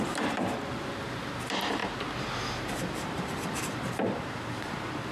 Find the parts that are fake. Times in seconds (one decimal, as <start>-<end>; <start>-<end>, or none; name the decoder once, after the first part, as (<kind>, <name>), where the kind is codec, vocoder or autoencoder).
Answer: 0.0-5.1 (vocoder, BigVGAN v2)